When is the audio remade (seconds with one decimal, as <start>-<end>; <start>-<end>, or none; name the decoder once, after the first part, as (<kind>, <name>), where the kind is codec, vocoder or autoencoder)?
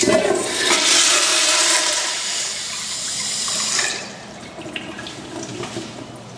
1.3-5.1 (vocoder, BigVGAN v2)